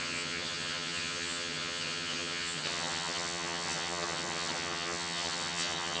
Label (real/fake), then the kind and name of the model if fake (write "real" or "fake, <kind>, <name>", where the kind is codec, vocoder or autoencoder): fake, vocoder, HiFi-GAN